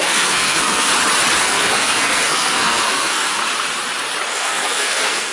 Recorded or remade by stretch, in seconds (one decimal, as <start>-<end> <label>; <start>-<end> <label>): 0.0-0.9 remade; 0.9-1.4 recorded; 1.4-3.4 remade; 3.4-4.3 recorded; 4.3-5.3 remade